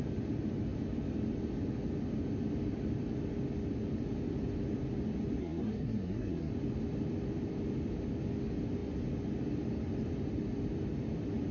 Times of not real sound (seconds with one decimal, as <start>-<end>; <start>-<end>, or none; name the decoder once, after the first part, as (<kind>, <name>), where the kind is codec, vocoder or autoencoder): 5.4-6.5 (codec, SNAC)